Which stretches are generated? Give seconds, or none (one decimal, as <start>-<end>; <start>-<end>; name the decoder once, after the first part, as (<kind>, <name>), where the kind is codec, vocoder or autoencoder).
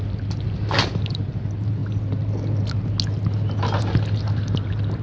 none